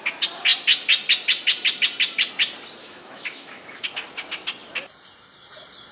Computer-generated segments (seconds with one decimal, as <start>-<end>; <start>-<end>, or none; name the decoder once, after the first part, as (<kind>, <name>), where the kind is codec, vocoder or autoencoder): 2.8-3.8 (autoencoder, DAC-VAE)